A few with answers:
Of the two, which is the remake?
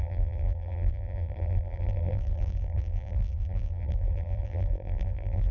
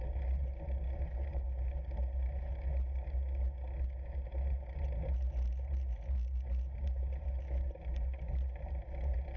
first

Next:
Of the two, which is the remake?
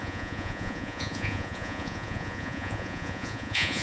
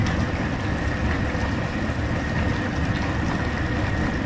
first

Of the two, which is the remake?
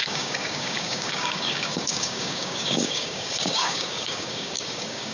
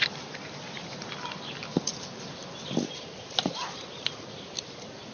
first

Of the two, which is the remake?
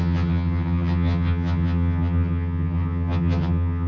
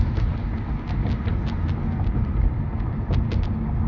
first